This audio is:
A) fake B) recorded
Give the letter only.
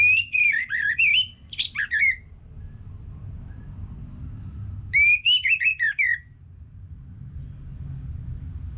B